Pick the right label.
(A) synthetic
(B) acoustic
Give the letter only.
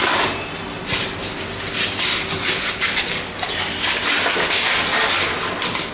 B